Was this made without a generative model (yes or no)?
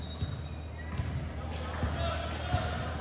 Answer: yes